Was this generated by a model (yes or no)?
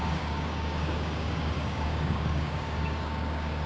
yes